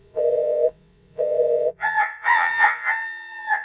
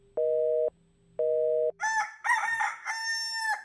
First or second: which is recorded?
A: second